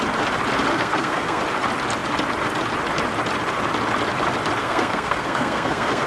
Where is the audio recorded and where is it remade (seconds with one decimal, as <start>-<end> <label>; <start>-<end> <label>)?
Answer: 0.0-0.7 recorded; 0.7-1.4 remade; 1.4-4.6 recorded; 4.6-6.1 remade